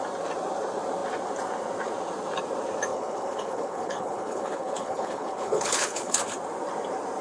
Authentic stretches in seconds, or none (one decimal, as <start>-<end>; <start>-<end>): 0.0-2.9; 6.2-7.2